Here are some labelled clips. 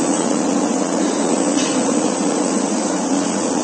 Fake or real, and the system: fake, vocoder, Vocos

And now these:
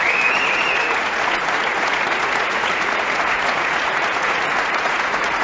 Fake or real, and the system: fake, vocoder, Vocos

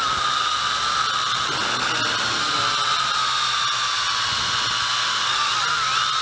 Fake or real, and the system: real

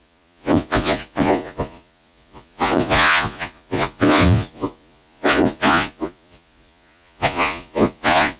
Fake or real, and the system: fake, vocoder, Vocos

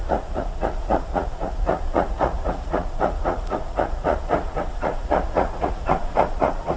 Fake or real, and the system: fake, vocoder, Vocos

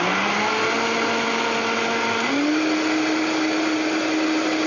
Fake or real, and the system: real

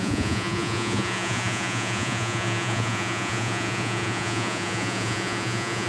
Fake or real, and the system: fake, vocoder, Vocos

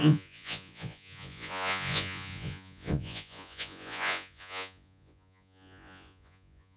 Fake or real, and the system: fake, vocoder, Vocos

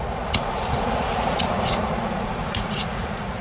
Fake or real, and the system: fake, vocoder, Vocos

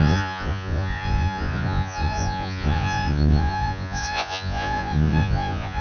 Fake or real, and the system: fake, vocoder, Vocos